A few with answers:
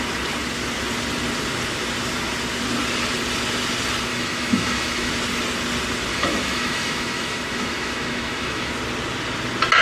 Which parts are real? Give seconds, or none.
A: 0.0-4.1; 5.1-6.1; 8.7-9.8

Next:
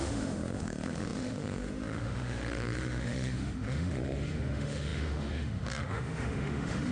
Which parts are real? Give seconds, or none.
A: none

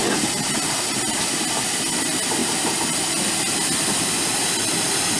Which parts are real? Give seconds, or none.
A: 0.0-5.2